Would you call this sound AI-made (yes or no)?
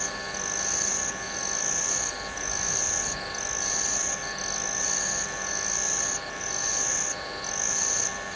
no